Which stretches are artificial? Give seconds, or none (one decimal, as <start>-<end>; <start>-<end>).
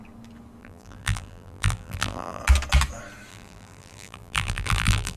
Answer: 0.6-2.4; 3.3-5.2